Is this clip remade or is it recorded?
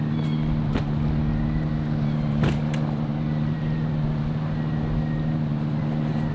recorded